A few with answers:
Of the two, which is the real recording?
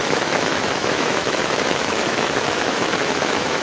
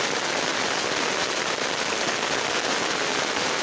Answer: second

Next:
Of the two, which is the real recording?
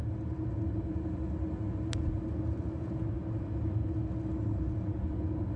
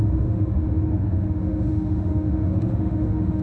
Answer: first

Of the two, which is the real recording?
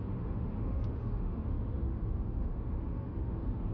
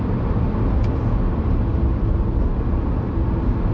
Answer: second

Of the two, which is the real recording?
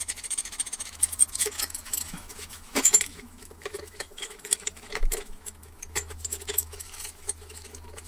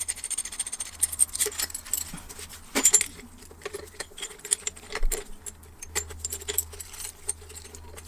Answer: second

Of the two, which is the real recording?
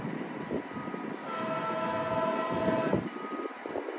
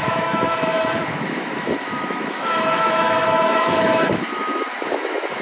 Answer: first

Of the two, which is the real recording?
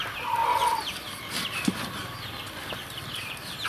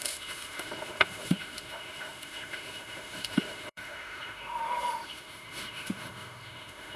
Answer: first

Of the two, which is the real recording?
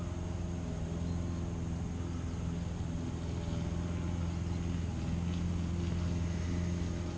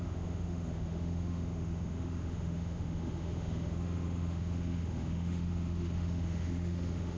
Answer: first